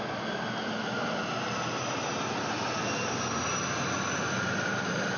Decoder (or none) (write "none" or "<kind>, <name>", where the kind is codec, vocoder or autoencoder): none